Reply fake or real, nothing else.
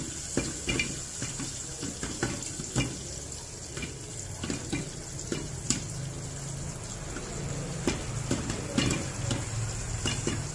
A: real